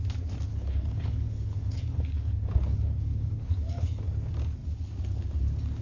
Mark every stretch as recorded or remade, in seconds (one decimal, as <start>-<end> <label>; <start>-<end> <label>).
0.0-0.5 recorded; 0.5-4.0 remade; 4.0-5.8 recorded